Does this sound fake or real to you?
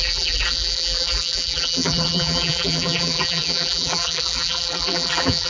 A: fake